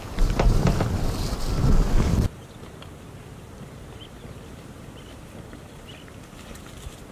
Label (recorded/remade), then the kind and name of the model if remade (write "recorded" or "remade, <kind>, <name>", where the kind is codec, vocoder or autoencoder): remade, vocoder, BigVGAN v2